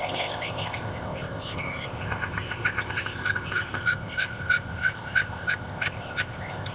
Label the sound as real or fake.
fake